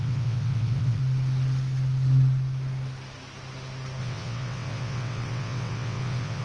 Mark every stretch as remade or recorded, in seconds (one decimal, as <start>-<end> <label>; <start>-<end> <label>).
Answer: 0.0-1.0 remade; 1.0-4.0 recorded; 4.0-6.4 remade